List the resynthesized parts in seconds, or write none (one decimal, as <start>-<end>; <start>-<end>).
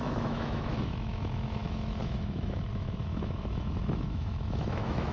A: 0.0-5.1